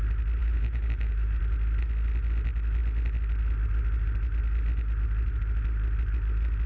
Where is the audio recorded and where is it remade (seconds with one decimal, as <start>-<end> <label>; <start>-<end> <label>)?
0.0-0.4 recorded; 0.4-1.4 remade; 1.4-6.7 recorded